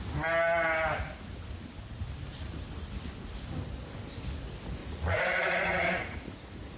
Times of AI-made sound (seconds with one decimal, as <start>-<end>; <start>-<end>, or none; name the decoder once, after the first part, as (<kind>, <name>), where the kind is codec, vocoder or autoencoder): 4.8-6.8 (vocoder, Vocos)